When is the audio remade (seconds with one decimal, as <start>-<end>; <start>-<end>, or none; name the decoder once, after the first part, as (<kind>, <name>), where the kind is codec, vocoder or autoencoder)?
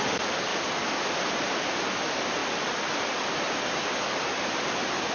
0.5-1.2 (vocoder, BigVGAN v2); 2.4-5.1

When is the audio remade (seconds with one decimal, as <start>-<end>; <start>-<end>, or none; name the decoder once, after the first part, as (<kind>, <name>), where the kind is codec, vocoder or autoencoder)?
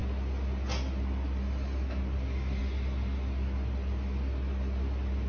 none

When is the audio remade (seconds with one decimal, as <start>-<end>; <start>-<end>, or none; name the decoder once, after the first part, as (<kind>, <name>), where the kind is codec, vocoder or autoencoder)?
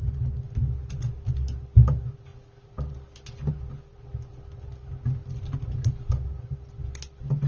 none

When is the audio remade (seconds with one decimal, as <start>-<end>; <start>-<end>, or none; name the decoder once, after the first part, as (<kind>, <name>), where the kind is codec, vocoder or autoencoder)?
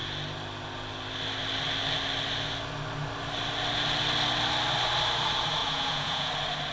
5.6-6.3 (vocoder, Vocos)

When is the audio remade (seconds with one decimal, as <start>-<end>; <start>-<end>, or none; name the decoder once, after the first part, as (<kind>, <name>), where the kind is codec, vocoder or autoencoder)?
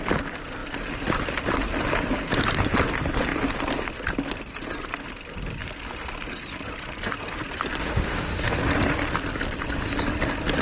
7.8-8.5 (autoencoder, DAC-VAE)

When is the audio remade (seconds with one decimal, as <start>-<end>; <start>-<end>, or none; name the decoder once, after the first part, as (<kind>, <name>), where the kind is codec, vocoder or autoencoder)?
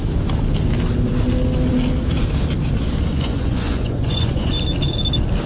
3.1-4.5 (vocoder, Vocos)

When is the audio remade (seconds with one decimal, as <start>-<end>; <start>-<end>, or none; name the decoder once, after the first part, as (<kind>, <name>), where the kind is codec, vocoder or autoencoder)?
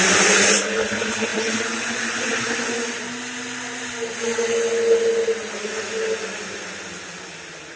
1.3-2.3 (vocoder, BigVGAN v2)